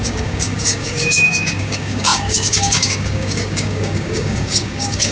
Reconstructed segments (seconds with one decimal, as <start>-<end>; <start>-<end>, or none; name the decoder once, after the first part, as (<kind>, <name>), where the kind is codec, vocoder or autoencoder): 0.0-5.1 (codec, DAC)